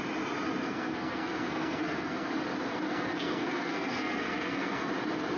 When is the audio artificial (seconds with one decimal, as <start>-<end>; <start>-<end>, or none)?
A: 0.6-2.3; 2.7-4.9